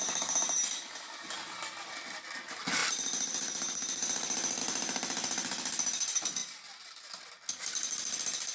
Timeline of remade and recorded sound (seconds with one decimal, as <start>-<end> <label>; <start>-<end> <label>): 0.0-8.5 recorded